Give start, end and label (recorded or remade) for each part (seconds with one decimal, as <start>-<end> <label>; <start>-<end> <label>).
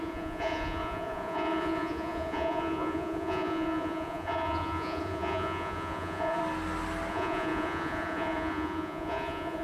0.0-6.4 remade; 6.4-7.1 recorded; 7.1-9.6 remade